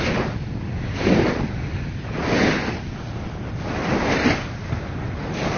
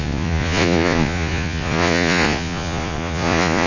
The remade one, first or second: second